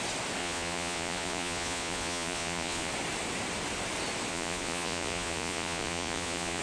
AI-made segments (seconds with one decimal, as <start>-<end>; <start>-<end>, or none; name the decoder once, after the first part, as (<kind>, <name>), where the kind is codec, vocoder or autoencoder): 0.4-2.9 (vocoder, Vocos); 4.3-6.6